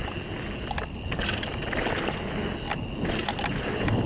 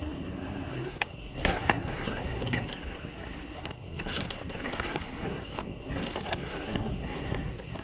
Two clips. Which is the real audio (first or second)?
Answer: first